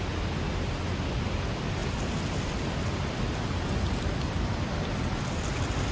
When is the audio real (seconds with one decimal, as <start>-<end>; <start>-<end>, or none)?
0.0-5.9